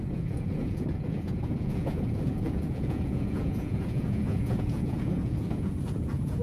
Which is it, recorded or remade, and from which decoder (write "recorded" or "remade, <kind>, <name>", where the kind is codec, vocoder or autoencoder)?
remade, vocoder, Vocos